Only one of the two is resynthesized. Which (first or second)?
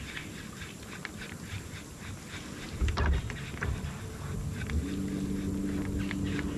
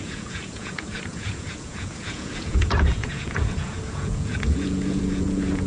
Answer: second